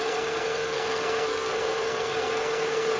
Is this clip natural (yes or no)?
no